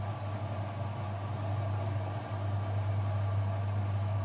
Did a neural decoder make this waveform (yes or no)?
no